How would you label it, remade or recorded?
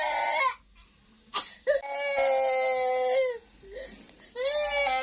recorded